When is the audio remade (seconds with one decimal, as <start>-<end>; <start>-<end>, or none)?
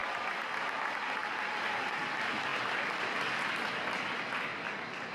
none